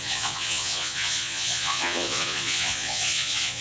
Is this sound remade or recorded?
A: remade